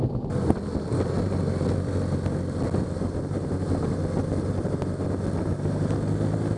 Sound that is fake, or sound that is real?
real